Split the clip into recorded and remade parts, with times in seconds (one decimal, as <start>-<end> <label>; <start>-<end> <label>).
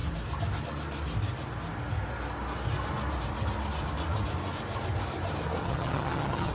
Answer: 0.0-5.6 recorded; 5.6-6.5 remade